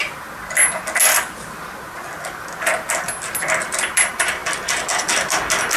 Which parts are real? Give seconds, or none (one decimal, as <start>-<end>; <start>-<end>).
0.0-5.8